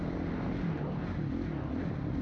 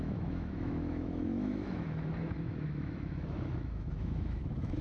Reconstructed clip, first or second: second